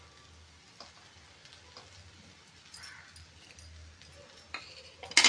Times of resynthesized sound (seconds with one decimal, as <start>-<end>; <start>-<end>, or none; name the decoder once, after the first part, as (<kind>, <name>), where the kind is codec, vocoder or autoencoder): none